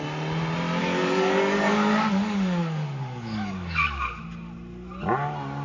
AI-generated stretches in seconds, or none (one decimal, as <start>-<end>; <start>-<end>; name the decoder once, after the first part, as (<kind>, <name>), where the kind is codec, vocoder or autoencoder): 0.8-4.2 (codec, DAC)